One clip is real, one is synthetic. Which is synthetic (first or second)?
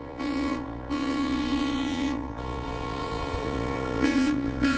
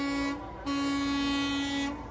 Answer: first